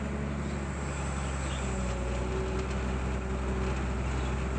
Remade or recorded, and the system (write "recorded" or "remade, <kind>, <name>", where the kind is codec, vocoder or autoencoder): recorded